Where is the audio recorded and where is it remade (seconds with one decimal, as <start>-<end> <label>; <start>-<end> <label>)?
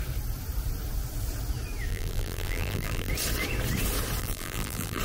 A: 0.0-1.9 recorded; 1.9-3.1 remade; 3.1-4.2 recorded; 4.2-5.0 remade